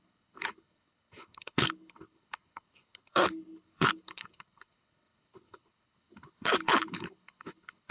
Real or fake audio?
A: fake